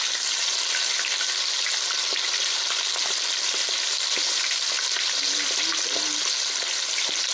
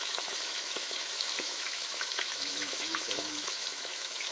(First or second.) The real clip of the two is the first